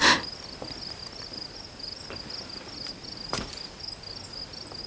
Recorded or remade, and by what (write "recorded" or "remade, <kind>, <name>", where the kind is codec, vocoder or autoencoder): recorded